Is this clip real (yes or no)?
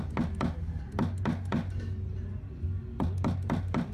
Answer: yes